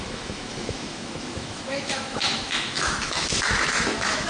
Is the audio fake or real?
fake